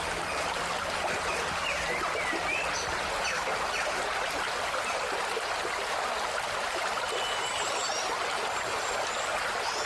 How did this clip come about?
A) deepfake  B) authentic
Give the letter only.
B